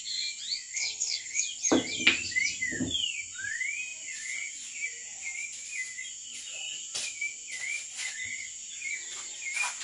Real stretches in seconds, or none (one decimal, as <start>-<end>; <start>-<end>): 0.0-0.7; 1.4-9.8